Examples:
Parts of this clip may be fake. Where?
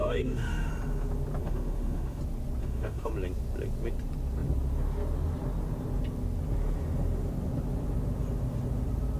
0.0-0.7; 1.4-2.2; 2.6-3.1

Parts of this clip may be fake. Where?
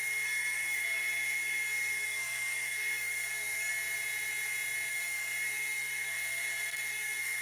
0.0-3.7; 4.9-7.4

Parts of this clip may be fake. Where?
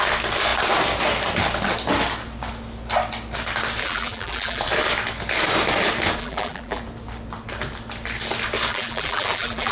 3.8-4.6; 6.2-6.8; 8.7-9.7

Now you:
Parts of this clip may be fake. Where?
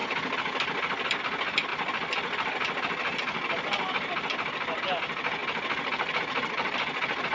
none